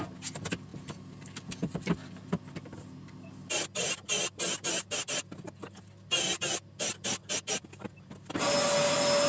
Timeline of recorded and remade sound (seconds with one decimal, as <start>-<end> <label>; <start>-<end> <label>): 0.0-9.3 recorded